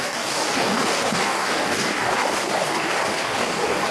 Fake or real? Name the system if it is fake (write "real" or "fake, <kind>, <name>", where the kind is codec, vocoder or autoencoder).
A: fake, codec, DAC